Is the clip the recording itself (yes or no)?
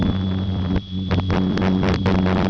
no